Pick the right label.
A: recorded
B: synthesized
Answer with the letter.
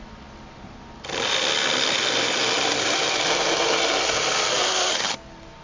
A